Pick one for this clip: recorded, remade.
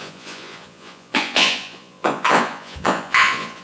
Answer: remade